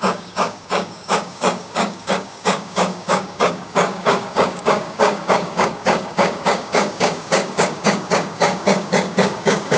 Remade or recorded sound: remade